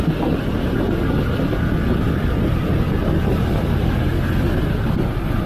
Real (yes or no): yes